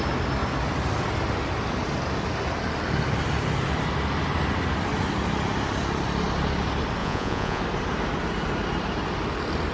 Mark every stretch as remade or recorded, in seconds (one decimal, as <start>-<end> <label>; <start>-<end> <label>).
0.0-7.0 recorded; 7.0-7.6 remade; 7.6-9.7 recorded